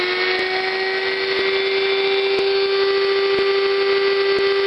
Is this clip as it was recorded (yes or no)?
yes